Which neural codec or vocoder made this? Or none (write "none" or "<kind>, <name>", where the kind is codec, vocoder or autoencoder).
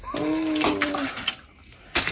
none